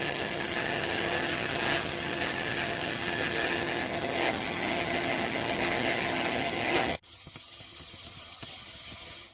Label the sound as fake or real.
fake